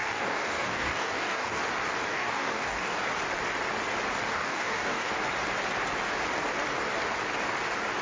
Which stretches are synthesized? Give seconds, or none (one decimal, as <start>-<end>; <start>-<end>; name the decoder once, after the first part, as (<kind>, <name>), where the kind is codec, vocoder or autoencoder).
0.0-1.6 (codec, DAC); 2.1-3.0; 4.3-5.1